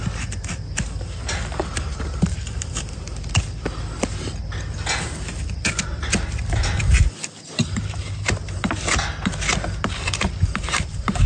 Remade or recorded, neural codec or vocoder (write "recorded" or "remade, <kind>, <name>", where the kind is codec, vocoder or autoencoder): recorded